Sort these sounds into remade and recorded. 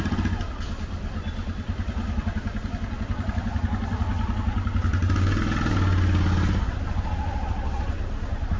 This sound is recorded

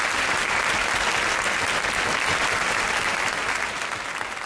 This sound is recorded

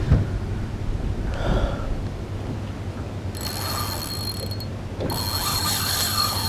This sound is recorded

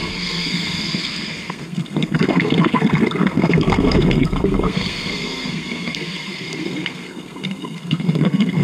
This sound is remade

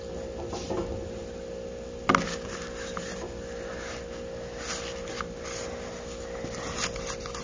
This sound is recorded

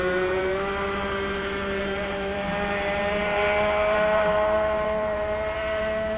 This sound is remade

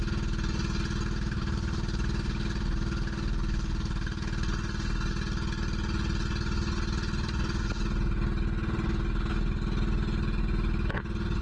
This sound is recorded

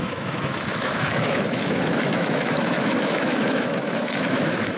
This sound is remade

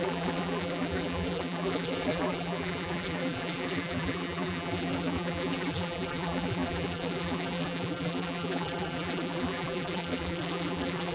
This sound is remade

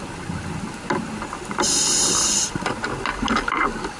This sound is recorded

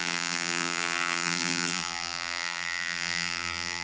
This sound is remade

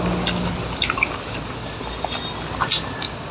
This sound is recorded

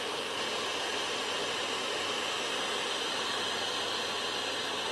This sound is recorded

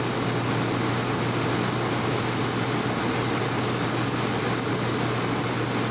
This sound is recorded